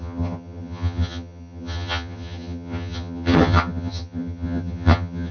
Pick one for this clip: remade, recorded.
remade